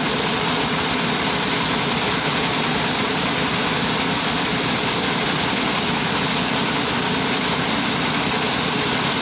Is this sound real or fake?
real